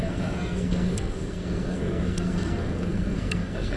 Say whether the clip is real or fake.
fake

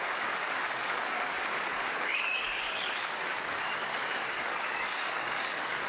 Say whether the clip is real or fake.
fake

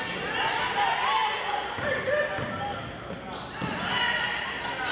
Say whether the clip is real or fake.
real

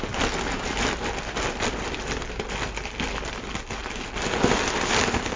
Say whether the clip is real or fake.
real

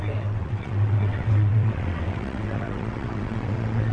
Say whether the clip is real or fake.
fake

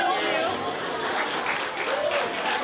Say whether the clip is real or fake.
real